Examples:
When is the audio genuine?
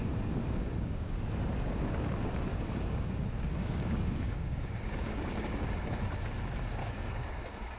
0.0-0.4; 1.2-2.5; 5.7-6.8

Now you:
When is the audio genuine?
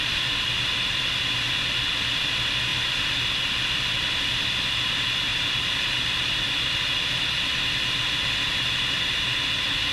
0.0-5.3; 6.7-9.9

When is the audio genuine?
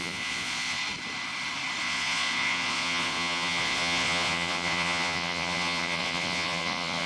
0.8-1.8